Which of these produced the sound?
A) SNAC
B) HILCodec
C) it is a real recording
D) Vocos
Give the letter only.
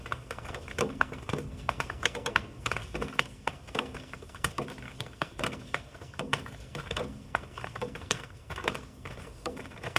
A